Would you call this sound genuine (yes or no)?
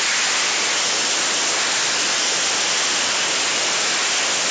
yes